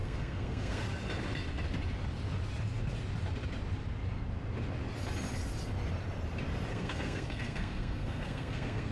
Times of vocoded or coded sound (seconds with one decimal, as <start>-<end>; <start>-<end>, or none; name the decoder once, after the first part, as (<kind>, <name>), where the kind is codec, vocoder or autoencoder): 0.0-0.8 (codec, SNAC); 6.7-8.9